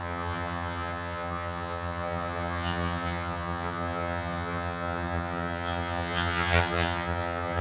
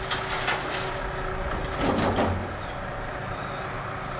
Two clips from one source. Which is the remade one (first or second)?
first